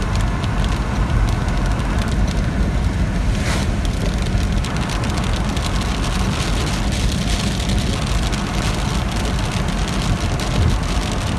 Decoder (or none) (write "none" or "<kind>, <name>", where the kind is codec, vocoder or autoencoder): none